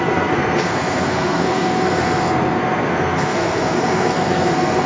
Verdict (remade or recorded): remade